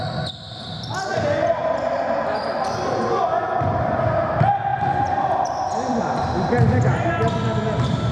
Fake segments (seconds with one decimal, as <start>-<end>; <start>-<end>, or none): 1.6-3.1; 4.7-6.0

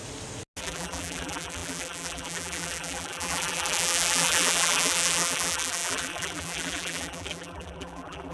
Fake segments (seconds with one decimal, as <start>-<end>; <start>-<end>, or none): 0.6-8.3

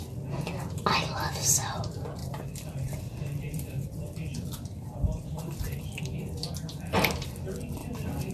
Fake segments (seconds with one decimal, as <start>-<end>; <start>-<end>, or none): 2.2-6.9; 7.8-8.3

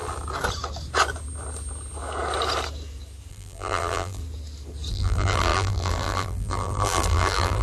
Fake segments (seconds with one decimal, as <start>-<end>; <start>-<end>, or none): 3.3-4.2; 4.9-7.6

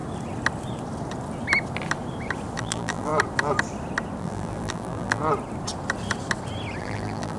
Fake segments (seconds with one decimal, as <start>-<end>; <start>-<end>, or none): 2.6-3.1; 4.2-5.2; 6.8-7.4

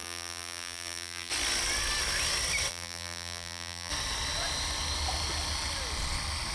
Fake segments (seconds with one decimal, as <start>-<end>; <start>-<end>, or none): 0.0-1.3; 2.7-3.9

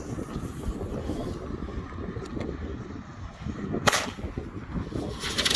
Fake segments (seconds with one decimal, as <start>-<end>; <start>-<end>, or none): none

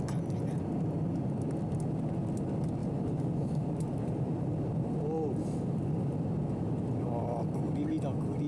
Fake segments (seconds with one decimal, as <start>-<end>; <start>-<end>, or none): 2.8-4.8